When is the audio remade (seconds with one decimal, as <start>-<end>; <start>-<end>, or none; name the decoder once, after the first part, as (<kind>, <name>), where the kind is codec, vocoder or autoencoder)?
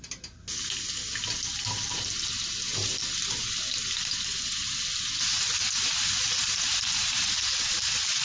none